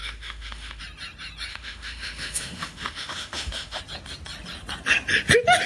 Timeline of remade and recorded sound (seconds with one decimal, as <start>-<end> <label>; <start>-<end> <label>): 0.0-0.8 remade; 0.8-1.5 recorded; 1.5-3.8 remade; 3.8-5.7 recorded